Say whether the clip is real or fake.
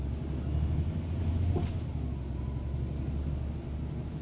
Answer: real